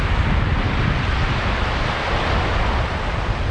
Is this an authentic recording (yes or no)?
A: yes